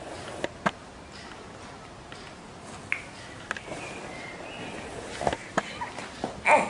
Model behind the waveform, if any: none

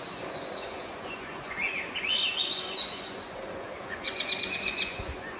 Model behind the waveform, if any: vocoder, Vocos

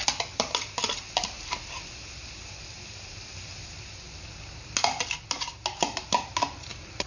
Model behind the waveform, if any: none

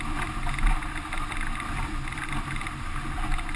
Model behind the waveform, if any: none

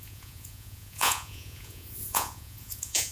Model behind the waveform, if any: vocoder, Vocos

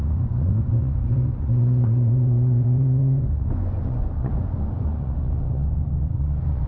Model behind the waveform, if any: vocoder, Vocos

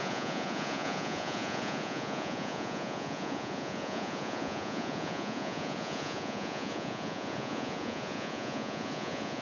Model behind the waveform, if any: vocoder, Vocos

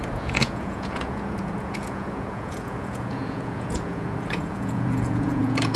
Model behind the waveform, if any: vocoder, Vocos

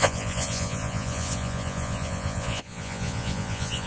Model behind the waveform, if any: vocoder, Vocos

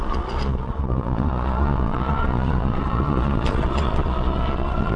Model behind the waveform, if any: vocoder, Vocos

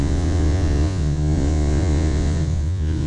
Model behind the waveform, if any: vocoder, Vocos